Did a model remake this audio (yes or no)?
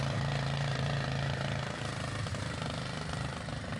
no